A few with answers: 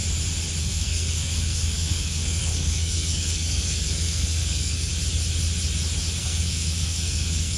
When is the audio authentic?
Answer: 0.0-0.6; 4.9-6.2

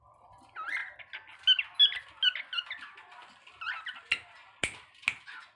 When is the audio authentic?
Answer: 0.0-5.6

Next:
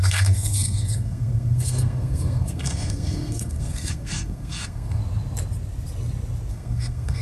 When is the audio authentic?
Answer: 5.0-6.5